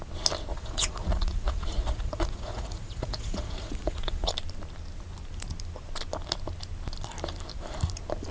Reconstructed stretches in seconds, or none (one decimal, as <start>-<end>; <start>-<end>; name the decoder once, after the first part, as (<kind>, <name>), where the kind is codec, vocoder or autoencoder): 0.5-4.3 (vocoder, Vocos)